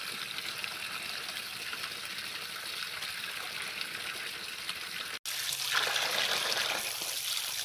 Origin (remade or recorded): recorded